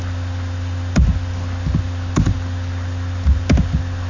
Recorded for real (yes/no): yes